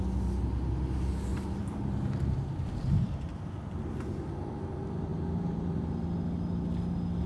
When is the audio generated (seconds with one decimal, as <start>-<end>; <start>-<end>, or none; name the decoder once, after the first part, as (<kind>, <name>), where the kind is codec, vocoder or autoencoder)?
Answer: 1.3-3.5 (vocoder, BigVGAN v2); 5.1-5.9

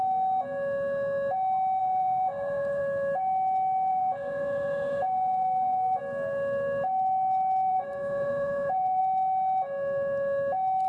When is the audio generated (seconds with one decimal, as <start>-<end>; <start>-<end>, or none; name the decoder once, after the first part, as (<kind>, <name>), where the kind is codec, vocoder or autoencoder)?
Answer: 1.8-2.8 (vocoder, Vocos); 3.9-6.0; 7.7-9.0

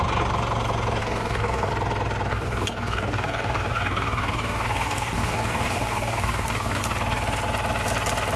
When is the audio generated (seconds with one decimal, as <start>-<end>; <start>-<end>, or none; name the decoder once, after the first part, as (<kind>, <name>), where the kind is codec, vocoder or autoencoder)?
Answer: 1.0-1.7 (codec, DAC); 2.3-6.8

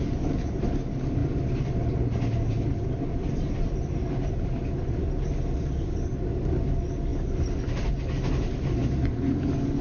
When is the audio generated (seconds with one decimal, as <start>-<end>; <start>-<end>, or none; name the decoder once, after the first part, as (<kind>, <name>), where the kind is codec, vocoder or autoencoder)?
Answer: none

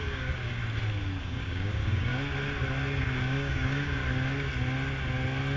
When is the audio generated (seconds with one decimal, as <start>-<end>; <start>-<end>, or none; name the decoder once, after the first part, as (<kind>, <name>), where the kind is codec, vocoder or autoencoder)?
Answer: 0.0-0.6 (codec, DAC); 1.2-2.1; 3.0-4.0

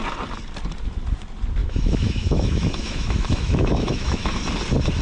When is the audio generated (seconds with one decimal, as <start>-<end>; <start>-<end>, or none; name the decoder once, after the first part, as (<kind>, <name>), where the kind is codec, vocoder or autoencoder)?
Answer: 1.6-4.4 (autoencoder, DAC-VAE)

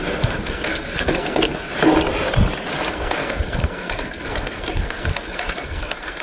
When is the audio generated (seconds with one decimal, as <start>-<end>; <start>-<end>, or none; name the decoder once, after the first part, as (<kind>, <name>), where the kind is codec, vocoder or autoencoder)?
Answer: 0.0-1.7 (codec, SNAC); 2.9-6.2

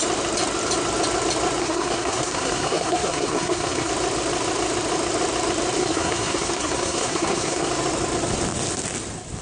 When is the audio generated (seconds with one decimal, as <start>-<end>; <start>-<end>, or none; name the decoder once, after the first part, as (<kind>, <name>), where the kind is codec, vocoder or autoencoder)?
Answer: 1.6-3.9 (codec, SNAC); 5.8-7.7